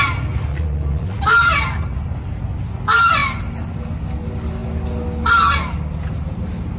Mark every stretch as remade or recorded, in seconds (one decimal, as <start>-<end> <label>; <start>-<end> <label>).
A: 0.0-0.5 recorded; 0.5-1.2 remade; 1.2-6.8 recorded